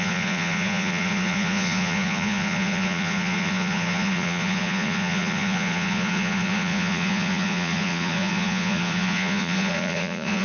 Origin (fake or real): fake